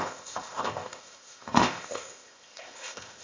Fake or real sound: fake